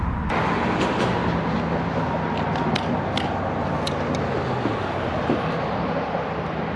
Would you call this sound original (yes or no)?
yes